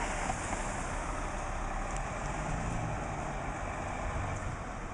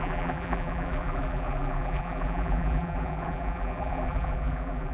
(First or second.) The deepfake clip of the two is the second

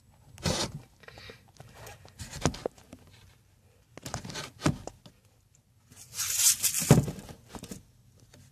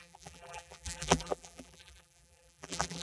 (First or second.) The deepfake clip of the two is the second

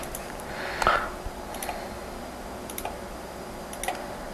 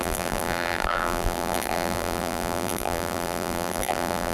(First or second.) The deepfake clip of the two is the second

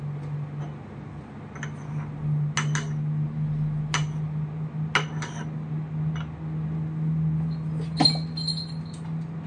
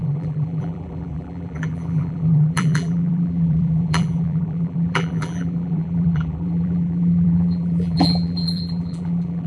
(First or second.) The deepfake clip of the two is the second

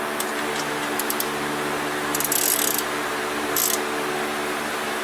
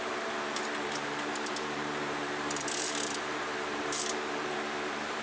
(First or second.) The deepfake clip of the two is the second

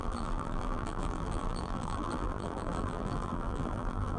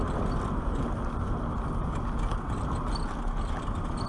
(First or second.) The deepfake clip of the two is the first